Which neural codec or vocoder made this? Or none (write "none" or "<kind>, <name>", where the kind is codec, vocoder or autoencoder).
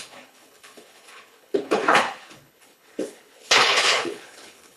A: codec, HILCodec